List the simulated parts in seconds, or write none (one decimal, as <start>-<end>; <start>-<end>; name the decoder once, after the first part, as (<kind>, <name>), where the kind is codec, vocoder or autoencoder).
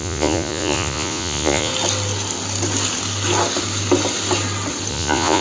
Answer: 0.0-1.7 (vocoder, Vocos); 4.9-5.4